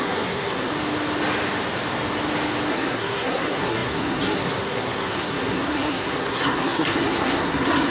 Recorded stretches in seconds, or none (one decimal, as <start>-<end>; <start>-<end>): 0.7-2.7